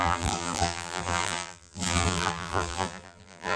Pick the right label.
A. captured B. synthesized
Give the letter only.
B